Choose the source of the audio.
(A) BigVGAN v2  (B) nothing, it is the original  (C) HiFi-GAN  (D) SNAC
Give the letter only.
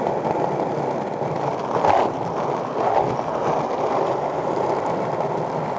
B